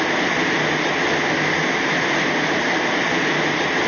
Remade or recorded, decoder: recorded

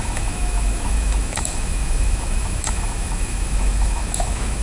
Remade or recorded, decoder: remade, autoencoder, DAC-VAE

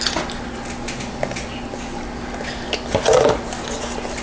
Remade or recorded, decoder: recorded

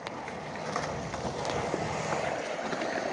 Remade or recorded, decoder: recorded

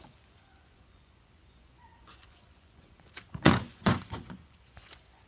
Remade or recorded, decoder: remade, vocoder, Vocos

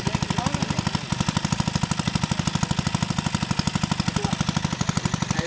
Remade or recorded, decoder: recorded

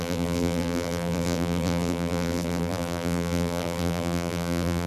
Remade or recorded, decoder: remade, vocoder, BigVGAN v2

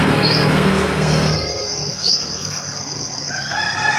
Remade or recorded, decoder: remade, codec, SNAC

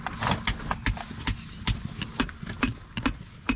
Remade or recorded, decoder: recorded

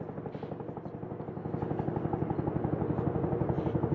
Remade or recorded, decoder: recorded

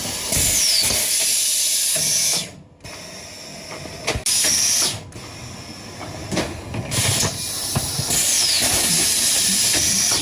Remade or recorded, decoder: recorded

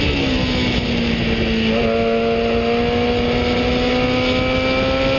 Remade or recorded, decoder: recorded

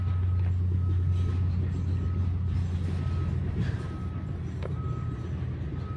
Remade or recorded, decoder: recorded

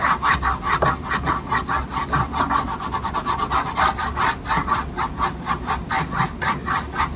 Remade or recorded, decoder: recorded